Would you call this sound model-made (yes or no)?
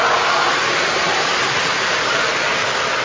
no